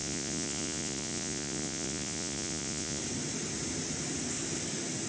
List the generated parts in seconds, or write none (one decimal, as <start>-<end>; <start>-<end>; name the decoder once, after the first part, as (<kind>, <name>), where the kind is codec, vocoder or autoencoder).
0.0-3.0 (vocoder, Vocos)